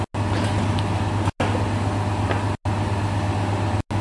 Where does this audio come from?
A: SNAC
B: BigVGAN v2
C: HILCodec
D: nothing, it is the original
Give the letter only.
D